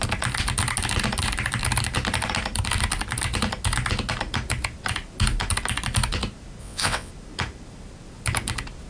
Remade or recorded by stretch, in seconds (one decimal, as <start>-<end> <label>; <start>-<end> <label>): 0.0-6.6 recorded; 6.6-7.1 remade; 7.1-8.9 recorded